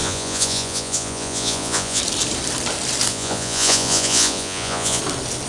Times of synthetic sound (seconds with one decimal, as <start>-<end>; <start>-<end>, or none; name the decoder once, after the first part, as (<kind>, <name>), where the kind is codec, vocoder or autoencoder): 0.0-2.0 (vocoder, Vocos); 3.1-5.0